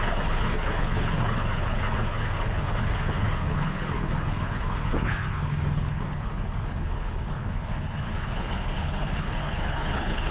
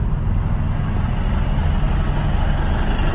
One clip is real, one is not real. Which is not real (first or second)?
first